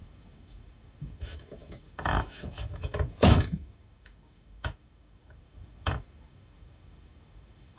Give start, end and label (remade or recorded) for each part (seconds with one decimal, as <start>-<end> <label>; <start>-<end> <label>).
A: 0.0-7.8 remade